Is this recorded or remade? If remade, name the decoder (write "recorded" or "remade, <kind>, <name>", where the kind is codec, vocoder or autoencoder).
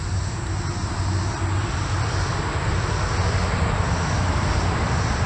recorded